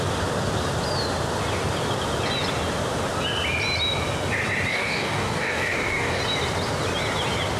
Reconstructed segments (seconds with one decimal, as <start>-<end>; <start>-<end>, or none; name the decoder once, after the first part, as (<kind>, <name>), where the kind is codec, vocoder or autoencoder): 4.7-6.2 (codec, DAC)